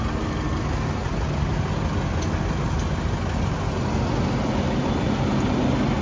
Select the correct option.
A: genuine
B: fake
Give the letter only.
A